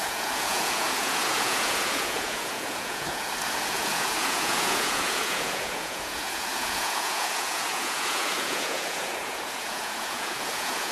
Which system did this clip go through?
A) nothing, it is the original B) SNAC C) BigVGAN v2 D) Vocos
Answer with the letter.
D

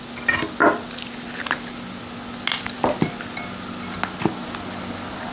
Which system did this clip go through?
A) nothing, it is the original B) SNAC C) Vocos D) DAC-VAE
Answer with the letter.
A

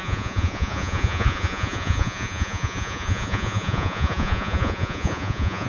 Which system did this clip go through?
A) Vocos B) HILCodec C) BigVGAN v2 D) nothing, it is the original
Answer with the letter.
A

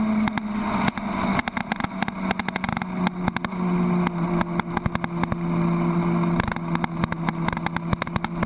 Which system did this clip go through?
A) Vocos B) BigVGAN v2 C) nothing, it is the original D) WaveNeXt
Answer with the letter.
C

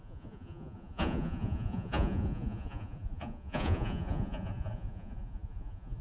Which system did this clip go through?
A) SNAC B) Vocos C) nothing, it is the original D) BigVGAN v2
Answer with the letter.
B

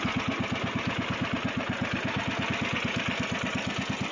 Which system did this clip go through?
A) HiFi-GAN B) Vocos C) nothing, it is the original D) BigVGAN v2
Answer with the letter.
C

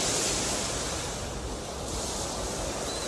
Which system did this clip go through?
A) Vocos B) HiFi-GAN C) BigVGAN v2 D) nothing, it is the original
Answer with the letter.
D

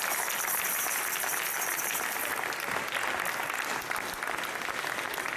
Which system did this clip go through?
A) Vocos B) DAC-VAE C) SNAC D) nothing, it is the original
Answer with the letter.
D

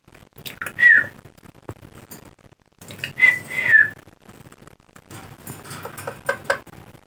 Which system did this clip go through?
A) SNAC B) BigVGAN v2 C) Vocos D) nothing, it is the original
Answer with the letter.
D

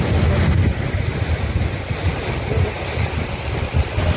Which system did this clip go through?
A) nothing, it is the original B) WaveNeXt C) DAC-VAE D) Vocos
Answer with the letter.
A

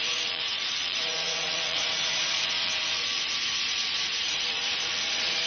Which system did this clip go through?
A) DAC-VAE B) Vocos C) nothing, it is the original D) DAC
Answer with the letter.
B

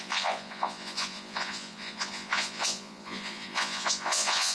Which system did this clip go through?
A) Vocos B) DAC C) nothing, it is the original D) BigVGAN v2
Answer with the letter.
A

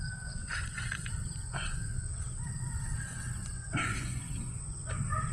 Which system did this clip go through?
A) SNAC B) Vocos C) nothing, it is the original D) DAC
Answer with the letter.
B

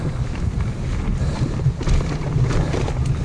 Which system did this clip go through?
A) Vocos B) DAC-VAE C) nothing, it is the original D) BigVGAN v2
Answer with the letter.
C